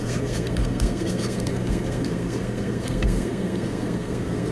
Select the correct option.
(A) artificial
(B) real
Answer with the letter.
A